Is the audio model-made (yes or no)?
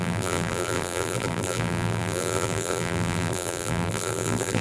yes